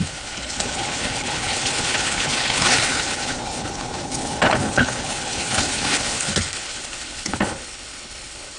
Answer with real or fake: fake